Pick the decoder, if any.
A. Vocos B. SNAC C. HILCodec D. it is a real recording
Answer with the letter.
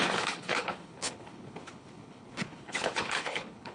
C